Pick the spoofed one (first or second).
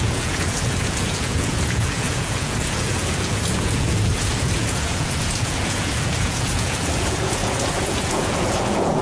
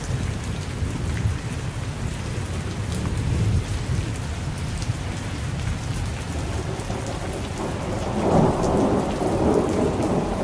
first